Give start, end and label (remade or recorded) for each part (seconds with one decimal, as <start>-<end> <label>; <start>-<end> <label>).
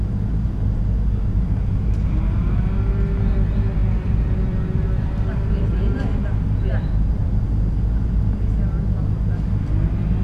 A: 0.0-3.8 recorded; 3.8-7.3 remade; 7.3-10.2 recorded